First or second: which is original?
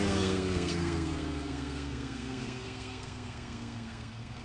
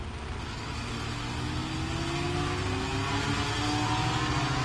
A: second